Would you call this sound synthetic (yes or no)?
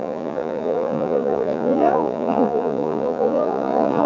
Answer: yes